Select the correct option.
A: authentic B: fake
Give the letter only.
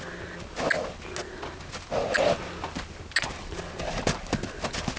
A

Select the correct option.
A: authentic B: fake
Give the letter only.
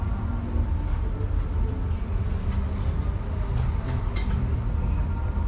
A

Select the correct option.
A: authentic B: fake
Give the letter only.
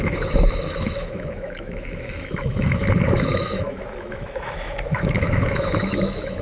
B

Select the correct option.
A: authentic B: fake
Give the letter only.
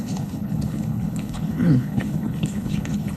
B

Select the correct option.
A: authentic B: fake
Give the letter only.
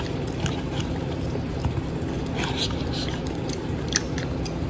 A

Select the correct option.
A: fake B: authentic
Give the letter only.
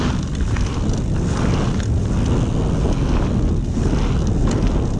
B